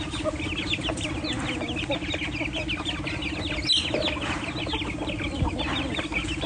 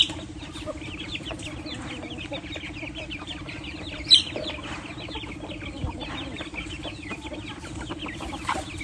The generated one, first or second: second